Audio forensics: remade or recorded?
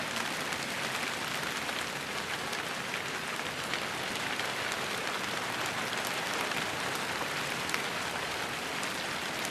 recorded